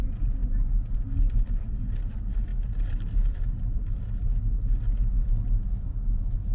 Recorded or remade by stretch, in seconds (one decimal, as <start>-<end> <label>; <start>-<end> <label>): 0.0-6.5 recorded

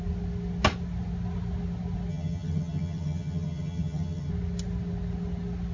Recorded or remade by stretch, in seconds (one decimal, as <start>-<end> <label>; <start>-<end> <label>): 0.0-2.1 recorded; 2.1-4.3 remade; 4.3-5.7 recorded

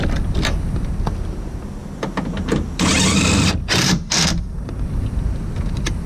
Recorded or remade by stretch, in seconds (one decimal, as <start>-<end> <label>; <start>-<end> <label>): 0.0-6.1 recorded

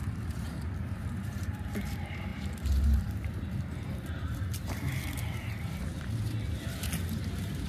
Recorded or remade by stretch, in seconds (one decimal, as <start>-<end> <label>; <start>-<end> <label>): 0.0-7.7 remade

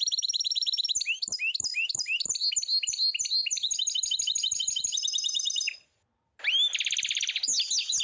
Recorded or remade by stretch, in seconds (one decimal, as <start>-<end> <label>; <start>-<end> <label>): 0.0-1.7 recorded; 1.7-2.5 remade; 2.5-8.0 recorded

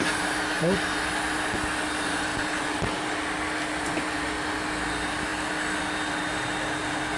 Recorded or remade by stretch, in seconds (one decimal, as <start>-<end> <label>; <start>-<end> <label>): 0.0-7.2 recorded